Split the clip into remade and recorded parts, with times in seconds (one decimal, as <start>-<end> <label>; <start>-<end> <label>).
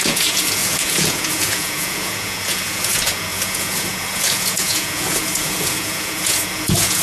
0.0-7.0 remade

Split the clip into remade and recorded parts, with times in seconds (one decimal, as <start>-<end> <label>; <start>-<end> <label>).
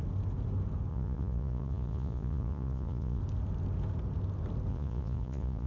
0.0-0.9 recorded; 0.9-3.2 remade; 3.2-4.7 recorded; 4.7-5.7 remade